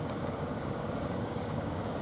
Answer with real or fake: fake